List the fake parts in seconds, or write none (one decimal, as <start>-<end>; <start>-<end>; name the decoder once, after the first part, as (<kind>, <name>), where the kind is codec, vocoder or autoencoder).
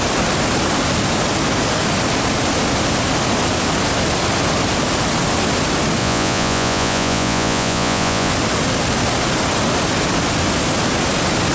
6.0-8.3 (vocoder, Vocos)